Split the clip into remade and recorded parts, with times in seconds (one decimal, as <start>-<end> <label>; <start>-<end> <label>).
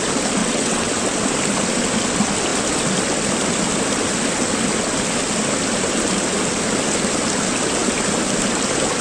0.0-0.4 recorded; 0.4-0.9 remade; 0.9-9.0 recorded